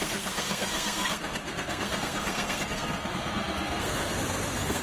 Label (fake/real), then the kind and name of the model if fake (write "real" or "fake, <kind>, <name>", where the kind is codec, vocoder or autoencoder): fake, codec, SNAC